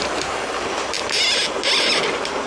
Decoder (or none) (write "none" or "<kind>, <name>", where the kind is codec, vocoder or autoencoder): none